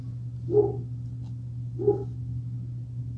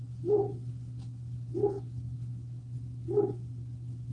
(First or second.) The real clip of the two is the first